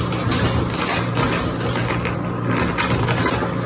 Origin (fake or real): real